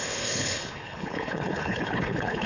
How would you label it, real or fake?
fake